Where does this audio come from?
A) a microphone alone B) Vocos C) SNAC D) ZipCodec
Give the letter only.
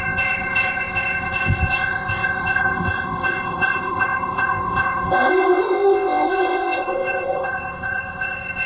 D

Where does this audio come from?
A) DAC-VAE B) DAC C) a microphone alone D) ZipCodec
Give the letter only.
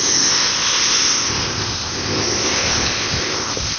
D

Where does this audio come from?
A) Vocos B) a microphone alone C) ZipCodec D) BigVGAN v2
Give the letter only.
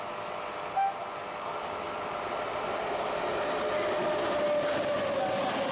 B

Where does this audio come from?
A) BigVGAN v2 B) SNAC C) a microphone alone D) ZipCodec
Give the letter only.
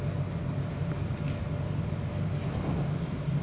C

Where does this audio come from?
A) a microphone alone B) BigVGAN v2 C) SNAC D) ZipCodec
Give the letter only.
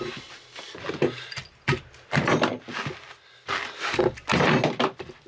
A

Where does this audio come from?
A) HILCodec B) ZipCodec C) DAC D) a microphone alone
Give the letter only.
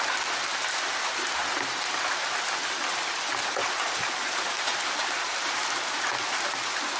D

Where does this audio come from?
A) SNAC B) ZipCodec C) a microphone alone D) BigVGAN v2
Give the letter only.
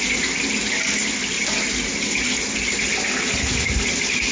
C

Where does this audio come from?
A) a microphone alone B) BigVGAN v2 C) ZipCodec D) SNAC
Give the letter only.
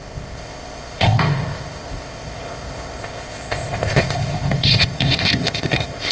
C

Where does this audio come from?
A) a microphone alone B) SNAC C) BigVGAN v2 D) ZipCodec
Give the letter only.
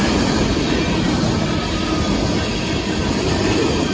A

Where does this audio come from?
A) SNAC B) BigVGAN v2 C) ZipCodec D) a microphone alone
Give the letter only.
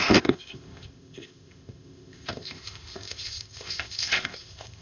C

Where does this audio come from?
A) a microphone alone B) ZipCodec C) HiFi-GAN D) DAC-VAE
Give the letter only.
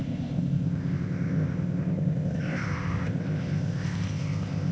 B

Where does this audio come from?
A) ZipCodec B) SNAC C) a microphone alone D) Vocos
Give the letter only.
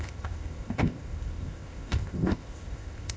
A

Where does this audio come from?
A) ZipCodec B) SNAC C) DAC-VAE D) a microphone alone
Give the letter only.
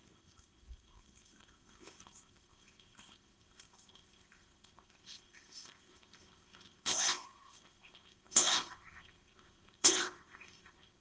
A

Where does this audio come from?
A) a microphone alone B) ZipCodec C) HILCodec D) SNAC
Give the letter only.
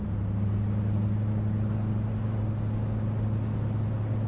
A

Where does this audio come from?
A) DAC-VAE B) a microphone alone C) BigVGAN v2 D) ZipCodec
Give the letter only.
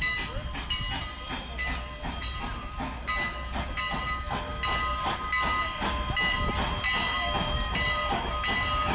B